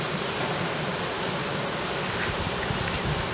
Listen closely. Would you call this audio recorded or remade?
recorded